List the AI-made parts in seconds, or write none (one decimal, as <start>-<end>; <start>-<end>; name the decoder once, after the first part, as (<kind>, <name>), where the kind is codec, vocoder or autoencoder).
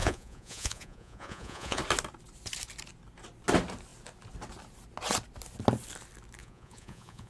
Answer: 0.0-1.8 (vocoder, Vocos); 6.4-7.3